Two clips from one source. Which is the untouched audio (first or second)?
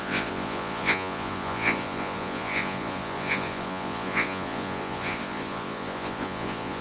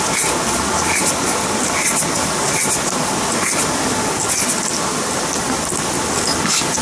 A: second